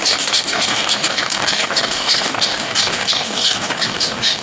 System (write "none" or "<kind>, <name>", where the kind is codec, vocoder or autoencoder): codec, DAC